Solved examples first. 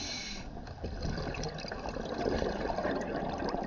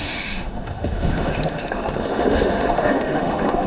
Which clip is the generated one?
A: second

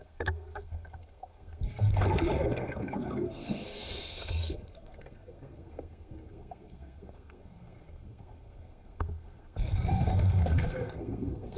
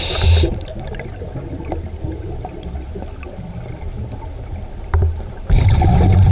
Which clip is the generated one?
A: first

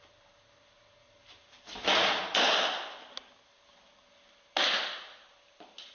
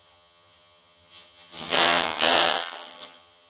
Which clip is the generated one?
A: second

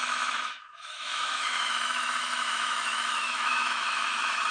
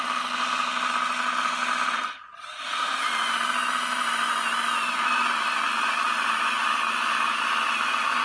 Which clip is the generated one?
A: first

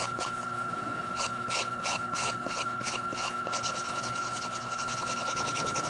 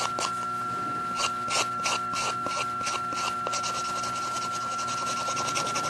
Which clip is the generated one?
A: first